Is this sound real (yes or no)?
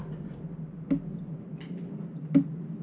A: yes